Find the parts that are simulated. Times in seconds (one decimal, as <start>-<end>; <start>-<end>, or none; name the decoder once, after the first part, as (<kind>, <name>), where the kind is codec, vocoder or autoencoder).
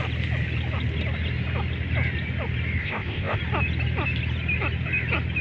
2.8-3.4 (codec, ZipCodec)